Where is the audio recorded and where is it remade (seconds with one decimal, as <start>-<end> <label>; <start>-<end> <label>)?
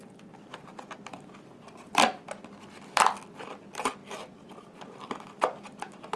0.0-6.2 recorded